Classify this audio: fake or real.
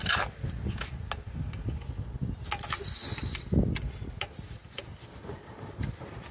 real